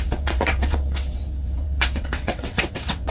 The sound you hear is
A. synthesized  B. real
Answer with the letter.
A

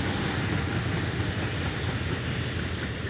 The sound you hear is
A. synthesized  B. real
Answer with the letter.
B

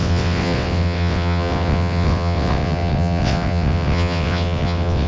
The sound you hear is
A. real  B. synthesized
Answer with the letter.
B